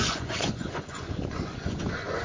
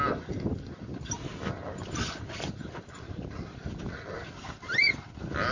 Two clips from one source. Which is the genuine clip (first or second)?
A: second